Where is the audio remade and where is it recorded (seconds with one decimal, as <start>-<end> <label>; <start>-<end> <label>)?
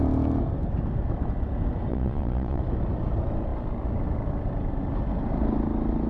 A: 0.0-1.9 recorded; 1.9-2.6 remade; 2.6-6.1 recorded